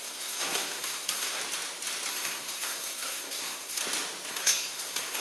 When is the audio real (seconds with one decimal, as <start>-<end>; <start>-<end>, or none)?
1.4-2.1; 3.8-4.3